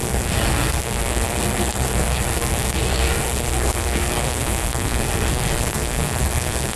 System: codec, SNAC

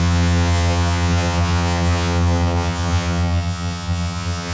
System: vocoder, HiFi-GAN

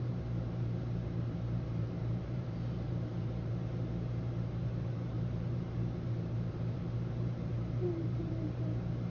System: vocoder, BigVGAN v2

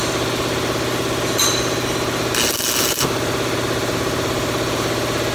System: none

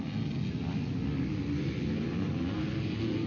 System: none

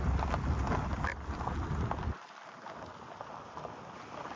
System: none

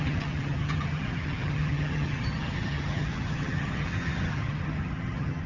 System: vocoder, HiFi-GAN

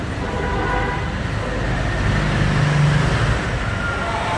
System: none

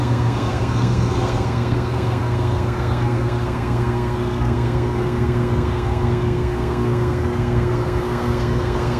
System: codec, SNAC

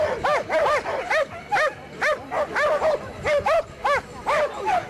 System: none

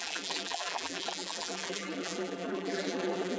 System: vocoder, BigVGAN v2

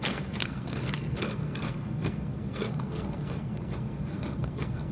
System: codec, SNAC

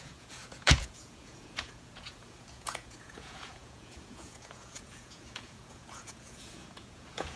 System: vocoder, Vocos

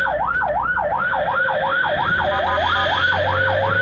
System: none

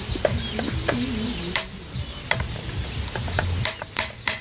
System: none